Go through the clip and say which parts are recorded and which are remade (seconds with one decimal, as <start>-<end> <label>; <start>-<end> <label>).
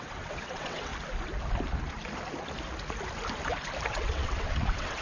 0.0-0.9 remade; 0.9-3.9 recorded; 3.9-5.0 remade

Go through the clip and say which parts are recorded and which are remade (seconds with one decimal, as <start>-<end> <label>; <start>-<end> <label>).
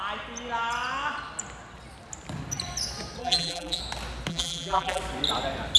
0.0-3.2 recorded; 3.2-3.8 remade; 3.8-4.3 recorded; 4.3-5.0 remade; 5.0-5.8 recorded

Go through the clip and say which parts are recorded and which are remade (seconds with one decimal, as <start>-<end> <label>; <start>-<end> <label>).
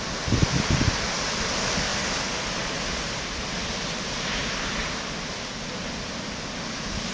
0.0-4.4 recorded; 4.4-6.6 remade; 6.6-7.1 recorded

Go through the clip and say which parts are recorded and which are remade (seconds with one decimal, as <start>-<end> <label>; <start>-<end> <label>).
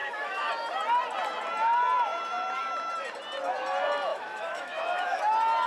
0.0-0.5 remade; 0.5-4.1 recorded; 4.1-5.2 remade; 5.2-5.7 recorded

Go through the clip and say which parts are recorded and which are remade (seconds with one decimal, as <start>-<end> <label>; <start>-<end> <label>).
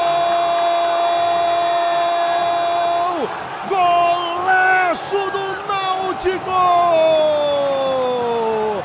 0.0-8.8 recorded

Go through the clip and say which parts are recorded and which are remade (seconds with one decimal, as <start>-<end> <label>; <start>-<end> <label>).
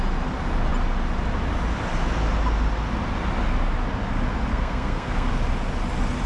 0.0-4.5 recorded; 4.5-5.3 remade; 5.3-6.3 recorded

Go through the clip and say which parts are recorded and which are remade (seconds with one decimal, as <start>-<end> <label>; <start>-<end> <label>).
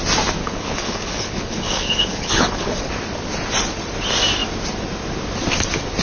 0.0-0.4 recorded; 0.4-2.9 remade; 2.9-6.0 recorded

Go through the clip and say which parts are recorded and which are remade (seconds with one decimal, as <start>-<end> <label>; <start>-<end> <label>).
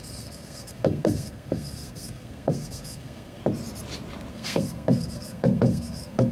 0.0-3.4 remade; 3.4-4.3 recorded; 4.3-6.3 remade